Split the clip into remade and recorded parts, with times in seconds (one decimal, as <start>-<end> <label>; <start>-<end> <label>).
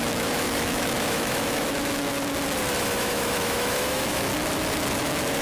0.0-2.1 remade; 2.1-2.8 recorded; 2.8-4.3 remade; 4.3-5.0 recorded; 5.0-5.4 remade